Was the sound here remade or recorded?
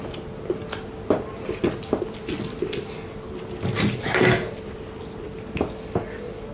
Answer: recorded